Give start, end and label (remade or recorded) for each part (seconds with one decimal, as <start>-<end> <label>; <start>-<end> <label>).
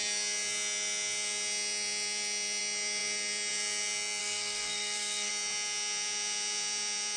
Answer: 0.0-4.2 recorded; 4.2-5.3 remade; 5.3-7.2 recorded